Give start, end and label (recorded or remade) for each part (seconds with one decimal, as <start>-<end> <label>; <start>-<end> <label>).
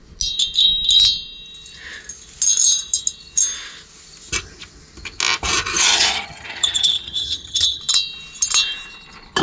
0.0-5.7 recorded; 5.7-7.8 remade; 7.8-9.4 recorded